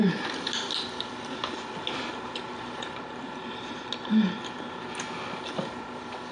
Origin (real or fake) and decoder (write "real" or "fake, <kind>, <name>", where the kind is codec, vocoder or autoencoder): real